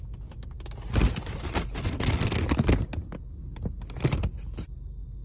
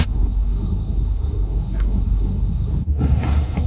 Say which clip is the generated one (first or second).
second